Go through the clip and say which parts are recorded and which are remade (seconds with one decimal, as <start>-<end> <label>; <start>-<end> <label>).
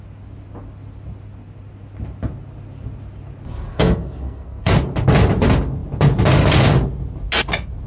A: 0.0-3.7 recorded; 3.7-4.7 remade; 4.7-7.9 recorded